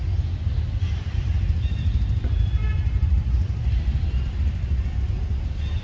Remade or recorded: recorded